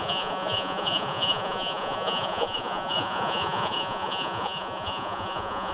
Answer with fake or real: fake